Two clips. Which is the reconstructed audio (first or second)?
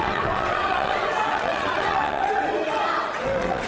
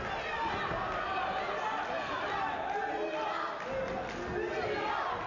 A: first